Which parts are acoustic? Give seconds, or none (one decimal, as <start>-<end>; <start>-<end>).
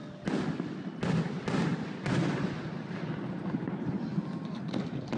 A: 0.0-5.2